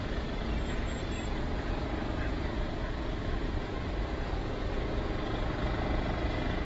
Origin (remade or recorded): remade